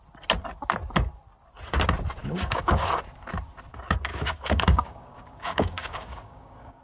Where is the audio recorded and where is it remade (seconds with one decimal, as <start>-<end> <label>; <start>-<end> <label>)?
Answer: 0.0-2.2 recorded; 2.2-3.0 remade; 3.0-4.1 recorded; 4.1-6.8 remade